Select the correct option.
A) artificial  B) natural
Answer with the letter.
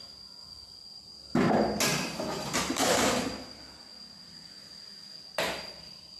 B